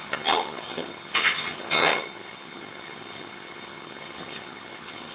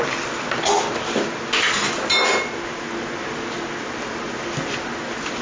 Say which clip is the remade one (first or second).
first